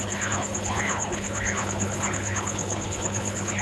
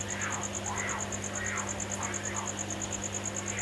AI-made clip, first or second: first